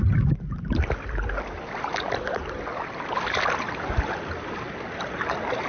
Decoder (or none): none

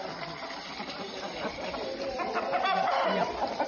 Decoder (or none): none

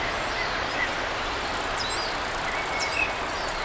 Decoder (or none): none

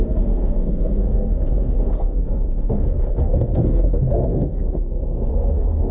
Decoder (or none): codec, SNAC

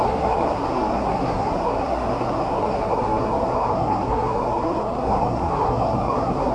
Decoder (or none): codec, SNAC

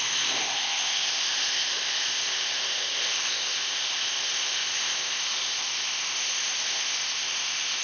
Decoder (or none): codec, ZipCodec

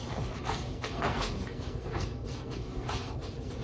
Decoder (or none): codec, SNAC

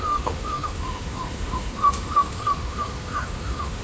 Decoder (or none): autoencoder, DAC-VAE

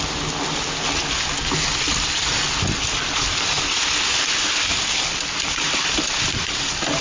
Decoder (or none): none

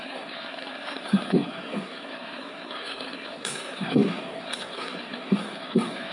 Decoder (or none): codec, SNAC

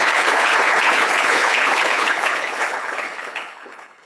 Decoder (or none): codec, HILCodec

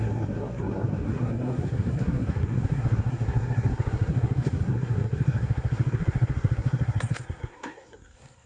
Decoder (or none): codec, SNAC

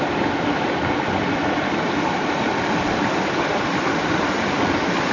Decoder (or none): none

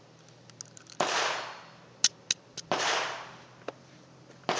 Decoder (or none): none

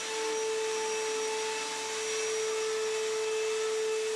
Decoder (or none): none